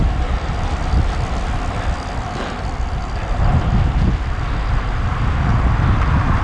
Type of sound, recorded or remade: recorded